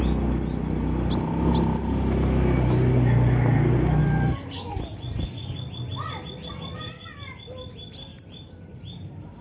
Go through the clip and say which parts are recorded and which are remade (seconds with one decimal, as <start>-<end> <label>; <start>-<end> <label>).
0.0-4.0 recorded; 4.0-4.6 remade; 4.6-8.1 recorded; 8.1-9.4 remade